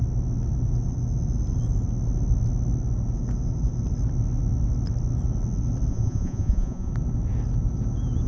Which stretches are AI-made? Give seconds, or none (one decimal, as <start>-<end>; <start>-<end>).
5.9-6.9